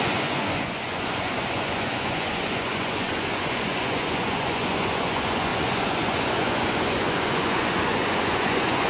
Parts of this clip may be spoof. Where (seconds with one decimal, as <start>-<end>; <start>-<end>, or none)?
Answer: 0.0-8.9